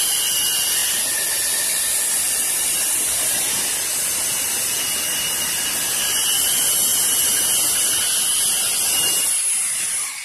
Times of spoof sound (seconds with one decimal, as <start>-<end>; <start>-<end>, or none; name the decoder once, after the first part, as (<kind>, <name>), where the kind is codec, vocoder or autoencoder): none